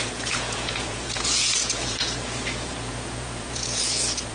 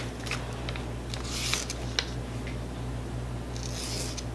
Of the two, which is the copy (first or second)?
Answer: first